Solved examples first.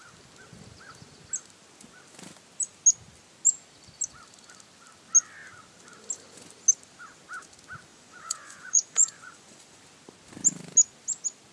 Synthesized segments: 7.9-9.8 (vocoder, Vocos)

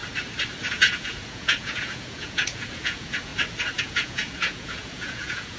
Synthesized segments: 0.7-3.3 (vocoder, Vocos); 3.8-5.6

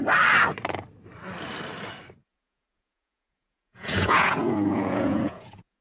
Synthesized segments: 2.2-5.8 (vocoder, Vocos)

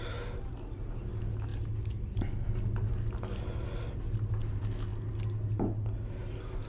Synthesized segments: none

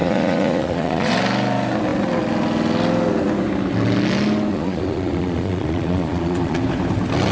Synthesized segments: 0.0-1.1 (vocoder, Vocos); 4.5-6.6

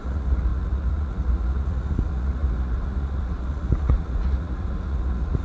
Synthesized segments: 0.0-5.4 (vocoder, Vocos)